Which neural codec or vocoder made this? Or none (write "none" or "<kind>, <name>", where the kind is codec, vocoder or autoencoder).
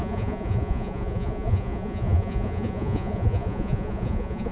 vocoder, Vocos